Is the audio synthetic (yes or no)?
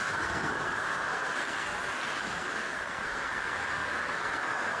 yes